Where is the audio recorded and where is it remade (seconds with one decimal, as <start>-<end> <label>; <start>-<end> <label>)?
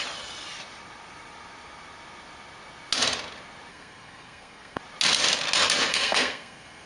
0.0-3.7 recorded; 3.7-4.8 remade; 4.8-5.9 recorded; 5.9-6.9 remade